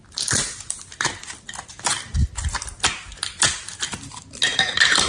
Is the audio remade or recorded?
recorded